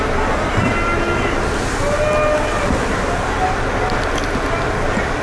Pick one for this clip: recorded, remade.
recorded